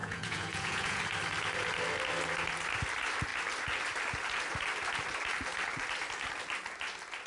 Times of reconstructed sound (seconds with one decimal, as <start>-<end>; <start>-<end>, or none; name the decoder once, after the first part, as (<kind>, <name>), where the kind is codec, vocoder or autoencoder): 0.0-1.0 (vocoder, Vocos)